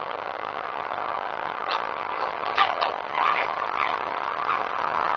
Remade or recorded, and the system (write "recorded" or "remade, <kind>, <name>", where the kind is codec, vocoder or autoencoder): remade, vocoder, HiFi-GAN